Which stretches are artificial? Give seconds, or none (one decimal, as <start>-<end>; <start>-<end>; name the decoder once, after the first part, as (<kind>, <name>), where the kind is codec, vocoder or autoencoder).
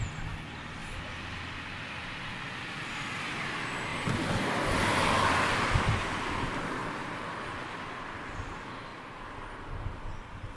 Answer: none